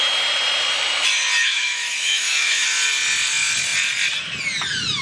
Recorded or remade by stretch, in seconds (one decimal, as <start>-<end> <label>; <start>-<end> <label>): 0.0-1.4 recorded; 1.4-2.6 remade; 2.6-5.0 recorded